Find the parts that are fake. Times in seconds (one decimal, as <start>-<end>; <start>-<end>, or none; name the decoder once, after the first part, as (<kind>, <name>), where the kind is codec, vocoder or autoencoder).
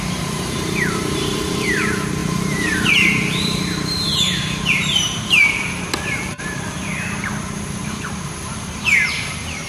0.0-9.7 (vocoder, BigVGAN v2)